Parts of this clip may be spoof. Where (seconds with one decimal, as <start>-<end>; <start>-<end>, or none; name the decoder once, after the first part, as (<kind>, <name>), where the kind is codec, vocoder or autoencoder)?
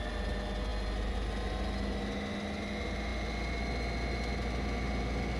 none